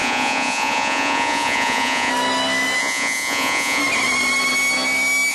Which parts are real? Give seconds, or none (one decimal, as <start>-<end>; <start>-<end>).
2.1-2.8; 3.8-5.3